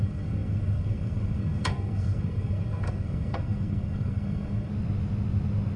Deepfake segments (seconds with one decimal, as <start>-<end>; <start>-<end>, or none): 0.0-4.7